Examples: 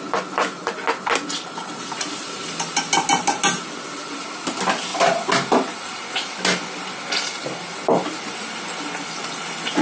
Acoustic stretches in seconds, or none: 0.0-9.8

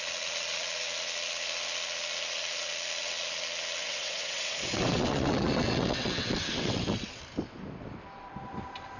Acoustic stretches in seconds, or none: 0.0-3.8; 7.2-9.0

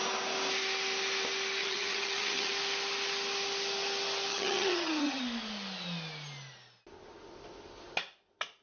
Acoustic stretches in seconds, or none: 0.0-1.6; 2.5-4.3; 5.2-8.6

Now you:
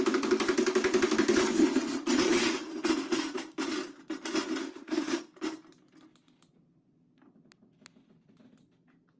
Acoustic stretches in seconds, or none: 0.0-4.6; 5.2-9.2

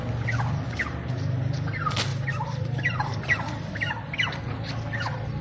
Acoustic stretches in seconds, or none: 0.0-2.1; 3.9-5.4

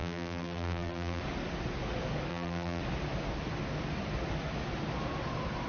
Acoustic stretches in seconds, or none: 1.2-2.3; 2.8-5.7

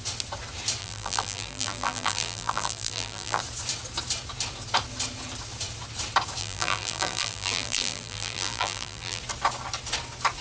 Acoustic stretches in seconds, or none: 0.0-0.8; 3.4-6.4; 9.2-10.4